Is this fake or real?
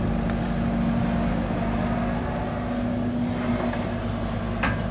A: real